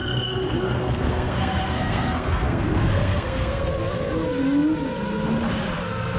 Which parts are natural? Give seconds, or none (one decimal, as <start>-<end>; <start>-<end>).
3.7-6.2